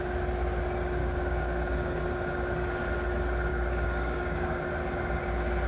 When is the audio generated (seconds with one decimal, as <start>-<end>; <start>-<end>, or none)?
1.0-2.0; 3.5-4.6